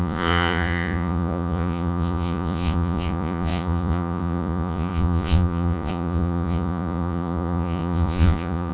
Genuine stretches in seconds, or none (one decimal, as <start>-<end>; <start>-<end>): none